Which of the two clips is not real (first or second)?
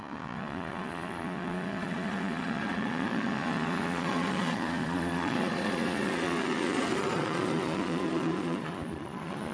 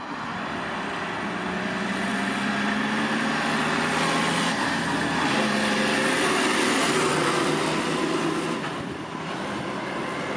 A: first